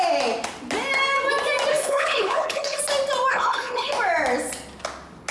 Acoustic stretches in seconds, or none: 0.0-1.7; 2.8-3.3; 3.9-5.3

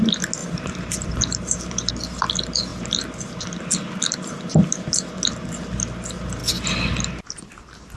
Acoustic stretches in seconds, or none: 0.0-0.4; 1.9-8.0

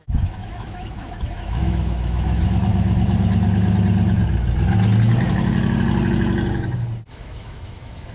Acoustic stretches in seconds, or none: 2.7-7.1

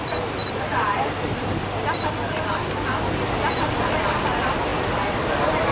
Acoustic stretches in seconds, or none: 0.0-5.7